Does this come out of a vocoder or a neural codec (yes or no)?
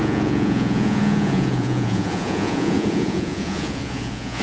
yes